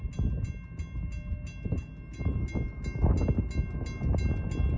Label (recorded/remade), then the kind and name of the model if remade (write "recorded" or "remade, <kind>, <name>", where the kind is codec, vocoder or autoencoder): recorded